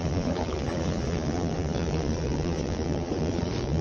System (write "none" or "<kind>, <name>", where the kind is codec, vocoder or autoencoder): vocoder, Vocos